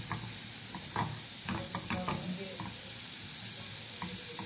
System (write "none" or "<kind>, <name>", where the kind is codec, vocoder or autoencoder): none